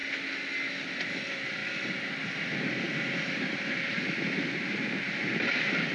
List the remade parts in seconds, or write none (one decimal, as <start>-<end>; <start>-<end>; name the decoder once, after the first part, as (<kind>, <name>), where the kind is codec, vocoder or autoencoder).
none